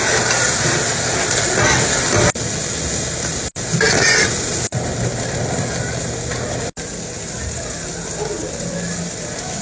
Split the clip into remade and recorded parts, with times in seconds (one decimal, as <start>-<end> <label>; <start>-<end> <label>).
0.0-9.6 recorded